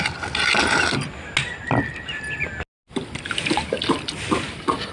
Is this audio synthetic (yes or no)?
no